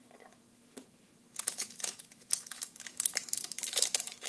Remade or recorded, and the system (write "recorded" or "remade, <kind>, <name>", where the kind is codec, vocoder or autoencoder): remade, autoencoder, DAC-VAE